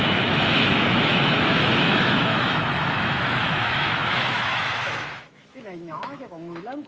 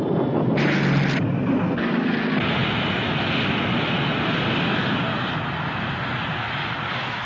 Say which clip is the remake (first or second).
first